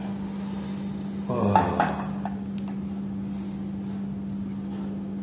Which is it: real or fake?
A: real